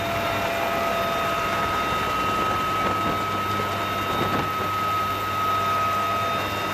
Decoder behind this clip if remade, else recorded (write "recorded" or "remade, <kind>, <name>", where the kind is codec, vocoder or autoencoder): recorded